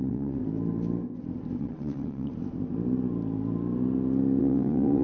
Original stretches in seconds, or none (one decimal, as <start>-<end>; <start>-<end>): 0.4-1.6; 2.3-4.4

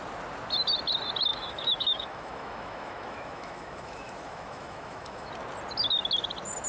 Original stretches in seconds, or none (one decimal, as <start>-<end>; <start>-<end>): 0.0-1.3; 5.3-6.7

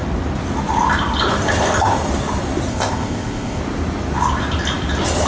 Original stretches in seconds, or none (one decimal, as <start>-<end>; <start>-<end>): 0.0-2.7; 3.6-5.3

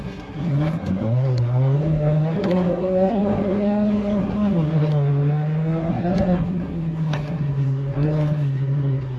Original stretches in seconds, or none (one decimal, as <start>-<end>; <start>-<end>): none

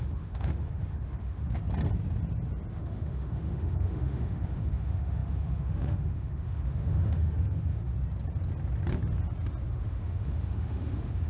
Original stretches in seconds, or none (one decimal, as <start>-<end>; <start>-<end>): 1.6-2.7; 7.9-9.7